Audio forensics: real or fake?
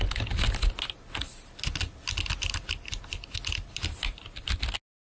real